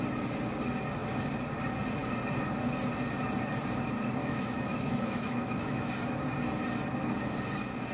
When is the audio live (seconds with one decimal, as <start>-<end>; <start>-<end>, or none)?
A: 0.0-4.2; 5.9-7.9